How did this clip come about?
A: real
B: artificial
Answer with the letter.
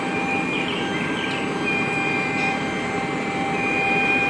B